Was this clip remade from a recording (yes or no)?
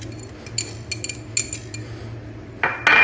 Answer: no